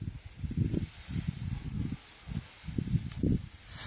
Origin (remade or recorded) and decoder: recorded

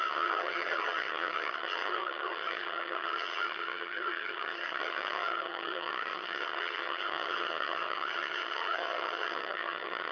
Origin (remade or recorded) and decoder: remade, vocoder, HiFi-GAN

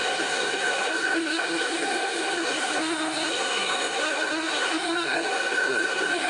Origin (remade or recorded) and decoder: remade, codec, SNAC